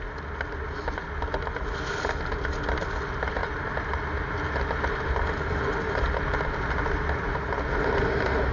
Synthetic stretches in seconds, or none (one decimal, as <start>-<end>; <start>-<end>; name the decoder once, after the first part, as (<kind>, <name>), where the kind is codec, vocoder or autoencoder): none